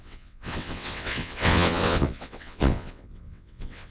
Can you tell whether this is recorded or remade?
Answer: remade